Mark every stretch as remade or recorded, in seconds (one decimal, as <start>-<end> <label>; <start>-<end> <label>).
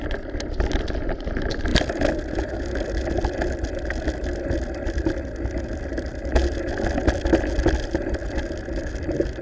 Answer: 0.0-9.4 recorded